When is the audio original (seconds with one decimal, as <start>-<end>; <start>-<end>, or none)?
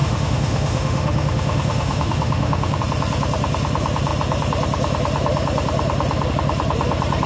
2.8-7.3